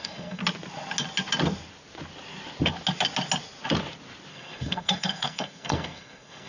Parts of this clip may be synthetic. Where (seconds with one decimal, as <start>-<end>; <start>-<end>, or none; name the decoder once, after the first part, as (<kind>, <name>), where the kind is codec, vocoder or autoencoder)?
0.0-0.4 (codec, SNAC); 4.3-6.5